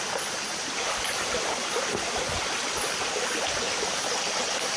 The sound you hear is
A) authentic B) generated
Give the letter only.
A